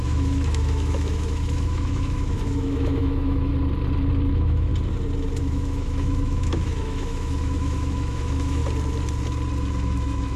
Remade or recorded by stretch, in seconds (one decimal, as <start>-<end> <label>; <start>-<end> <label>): 0.0-3.5 remade; 3.5-4.3 recorded; 4.3-4.7 remade; 4.7-5.4 recorded; 5.4-8.6 remade; 8.6-9.8 recorded; 9.8-10.4 remade

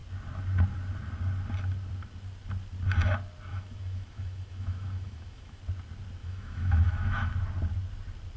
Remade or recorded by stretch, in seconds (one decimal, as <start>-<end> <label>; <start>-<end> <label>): 0.0-3.5 recorded; 3.5-5.6 remade; 5.6-6.2 recorded; 6.2-7.3 remade; 7.3-8.4 recorded

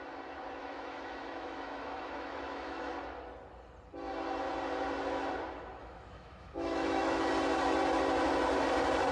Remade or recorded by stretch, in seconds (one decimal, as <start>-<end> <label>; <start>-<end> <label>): 0.0-0.6 recorded; 0.6-2.9 remade; 2.9-5.8 recorded; 5.8-7.3 remade; 7.3-9.1 recorded